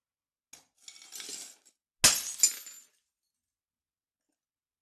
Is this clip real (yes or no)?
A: yes